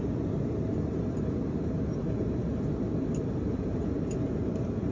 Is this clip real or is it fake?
real